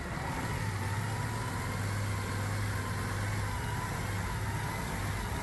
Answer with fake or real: real